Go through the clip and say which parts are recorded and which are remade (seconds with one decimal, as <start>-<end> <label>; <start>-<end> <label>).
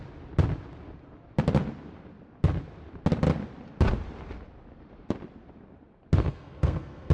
0.0-6.2 recorded; 6.2-7.1 remade